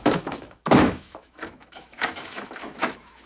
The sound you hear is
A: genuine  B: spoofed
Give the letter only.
B